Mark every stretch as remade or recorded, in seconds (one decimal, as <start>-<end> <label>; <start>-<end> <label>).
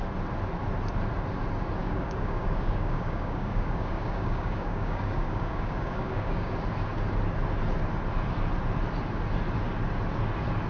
0.0-1.8 recorded; 1.8-6.5 remade; 6.5-10.7 recorded